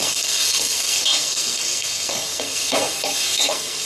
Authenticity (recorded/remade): remade